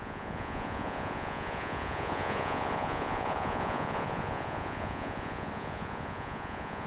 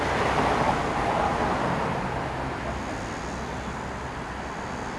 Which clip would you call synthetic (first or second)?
first